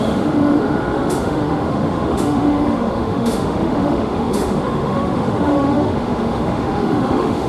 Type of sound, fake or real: fake